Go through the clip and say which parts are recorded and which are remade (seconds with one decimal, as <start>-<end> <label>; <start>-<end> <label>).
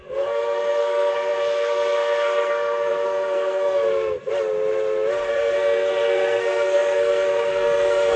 0.0-4.3 remade; 4.3-5.3 recorded; 5.3-8.2 remade